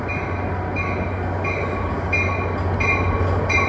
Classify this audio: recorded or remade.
recorded